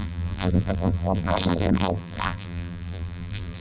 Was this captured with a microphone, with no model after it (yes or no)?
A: no